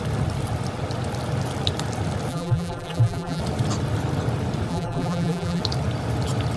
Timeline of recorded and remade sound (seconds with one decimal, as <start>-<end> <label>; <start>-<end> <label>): 0.0-2.3 recorded; 2.3-3.4 remade; 3.4-4.7 recorded; 4.7-5.6 remade; 5.6-6.6 recorded